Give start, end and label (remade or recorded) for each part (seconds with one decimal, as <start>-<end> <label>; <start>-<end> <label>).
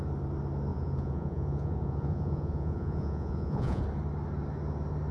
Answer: 0.0-0.7 recorded; 0.7-3.8 remade; 3.8-5.1 recorded